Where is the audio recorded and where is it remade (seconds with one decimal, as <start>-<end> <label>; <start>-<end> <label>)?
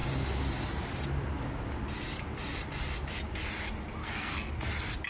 0.0-4.0 recorded; 4.0-4.5 remade; 4.5-5.1 recorded